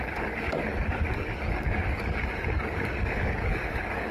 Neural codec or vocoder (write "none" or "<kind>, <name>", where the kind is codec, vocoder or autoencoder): codec, DAC